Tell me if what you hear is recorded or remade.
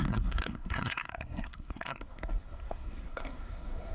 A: remade